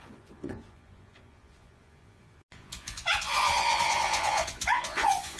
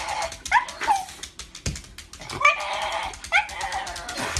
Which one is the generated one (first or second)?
first